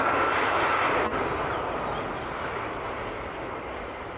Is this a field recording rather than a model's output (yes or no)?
yes